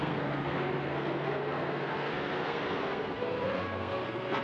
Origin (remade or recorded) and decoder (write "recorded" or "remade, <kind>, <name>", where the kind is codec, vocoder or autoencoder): remade, codec, SNAC